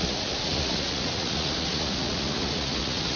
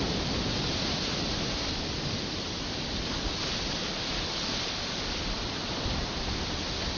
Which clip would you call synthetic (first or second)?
first